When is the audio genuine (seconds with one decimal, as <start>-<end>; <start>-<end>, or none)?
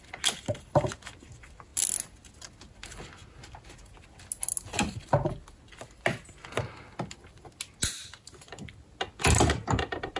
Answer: 0.0-10.2